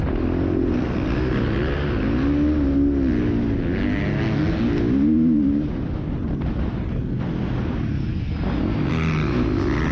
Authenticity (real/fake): real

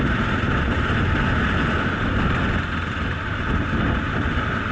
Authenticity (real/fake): real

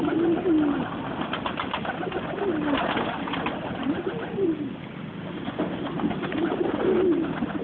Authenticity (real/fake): real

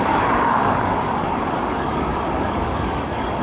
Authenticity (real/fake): fake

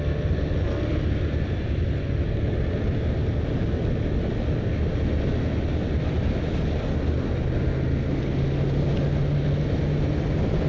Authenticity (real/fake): real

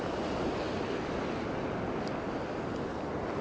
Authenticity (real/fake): real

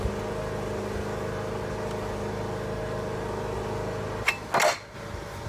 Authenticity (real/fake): real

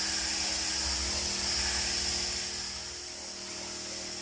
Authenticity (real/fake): real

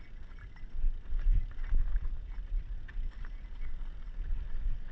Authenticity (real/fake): real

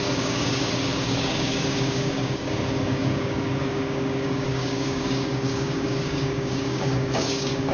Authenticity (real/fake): fake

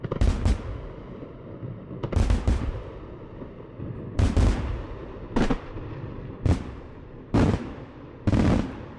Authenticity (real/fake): real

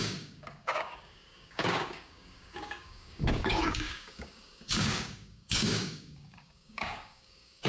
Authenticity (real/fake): fake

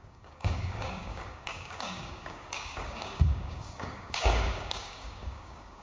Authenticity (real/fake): fake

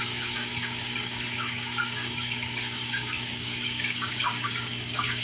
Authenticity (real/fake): fake